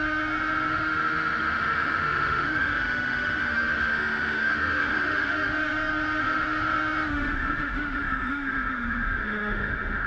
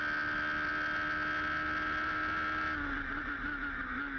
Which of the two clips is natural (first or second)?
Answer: second